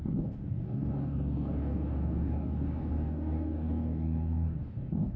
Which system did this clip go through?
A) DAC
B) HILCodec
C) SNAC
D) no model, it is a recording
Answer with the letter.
A